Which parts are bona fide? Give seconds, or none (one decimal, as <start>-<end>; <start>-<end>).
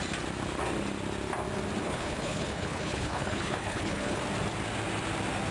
0.0-1.8; 4.2-5.5